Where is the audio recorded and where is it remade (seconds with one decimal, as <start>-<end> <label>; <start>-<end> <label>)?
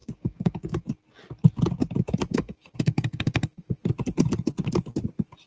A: 0.0-0.9 remade; 0.9-2.3 recorded; 2.3-3.8 remade; 3.8-5.5 recorded